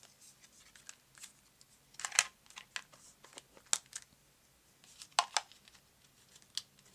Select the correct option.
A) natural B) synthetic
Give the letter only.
A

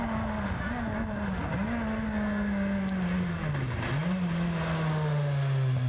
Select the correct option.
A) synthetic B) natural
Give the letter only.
B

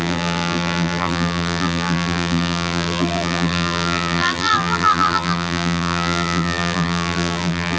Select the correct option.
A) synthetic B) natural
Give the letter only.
A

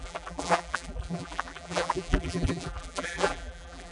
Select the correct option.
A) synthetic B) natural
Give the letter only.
A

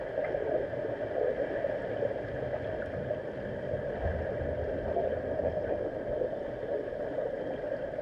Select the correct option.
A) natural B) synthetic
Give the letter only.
A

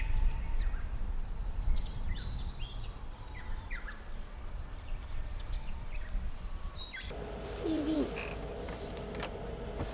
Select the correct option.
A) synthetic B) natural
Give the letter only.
A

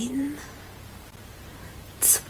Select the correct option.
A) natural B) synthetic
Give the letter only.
B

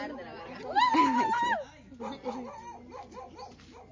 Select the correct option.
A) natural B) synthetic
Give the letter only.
A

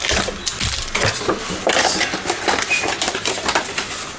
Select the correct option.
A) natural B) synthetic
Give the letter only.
A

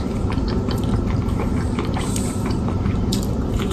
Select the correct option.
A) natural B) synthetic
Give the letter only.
B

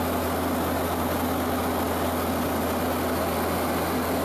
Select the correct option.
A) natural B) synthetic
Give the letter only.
A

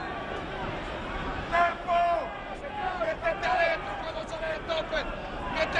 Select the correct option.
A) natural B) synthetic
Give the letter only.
B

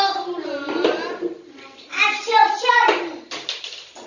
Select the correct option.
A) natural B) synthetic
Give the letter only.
A